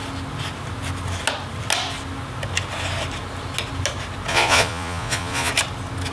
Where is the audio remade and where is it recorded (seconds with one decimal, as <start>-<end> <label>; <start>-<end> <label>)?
0.0-4.3 recorded; 4.3-5.5 remade; 5.5-6.1 recorded